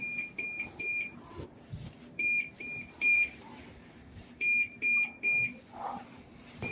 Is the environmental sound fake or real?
fake